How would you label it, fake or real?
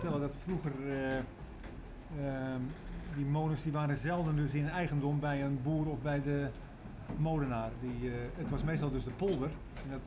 real